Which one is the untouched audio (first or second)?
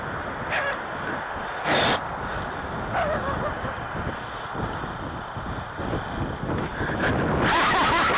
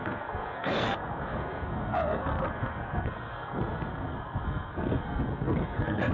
first